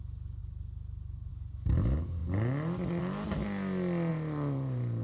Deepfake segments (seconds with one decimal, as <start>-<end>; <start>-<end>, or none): 0.4-1.3; 4.1-5.0